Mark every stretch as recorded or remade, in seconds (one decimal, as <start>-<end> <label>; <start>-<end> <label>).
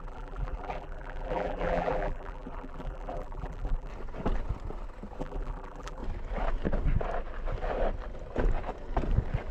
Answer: 0.0-3.9 remade; 3.9-5.2 recorded; 5.2-6.0 remade; 6.0-9.5 recorded